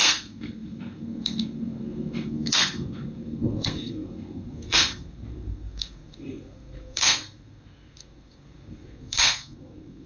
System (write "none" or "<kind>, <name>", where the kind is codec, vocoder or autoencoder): codec, SNAC